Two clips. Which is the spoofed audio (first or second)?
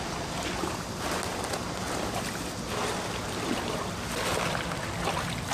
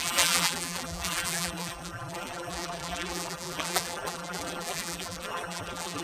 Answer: second